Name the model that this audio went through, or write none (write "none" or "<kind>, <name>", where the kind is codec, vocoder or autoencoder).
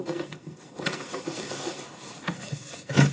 codec, SNAC